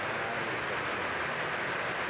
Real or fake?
real